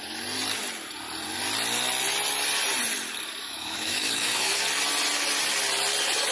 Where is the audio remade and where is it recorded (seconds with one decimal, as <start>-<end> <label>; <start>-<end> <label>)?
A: 0.0-3.4 recorded; 3.4-4.6 remade; 4.6-6.3 recorded